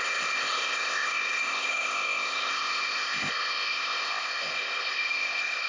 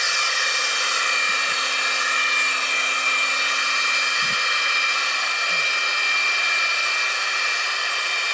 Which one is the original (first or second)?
second